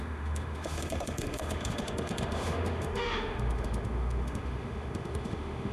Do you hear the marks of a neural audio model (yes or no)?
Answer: yes